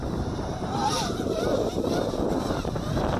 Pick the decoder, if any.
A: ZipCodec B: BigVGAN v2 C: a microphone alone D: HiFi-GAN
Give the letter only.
B